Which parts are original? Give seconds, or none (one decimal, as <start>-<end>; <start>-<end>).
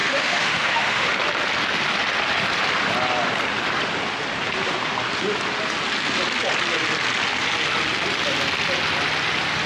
1.1-9.7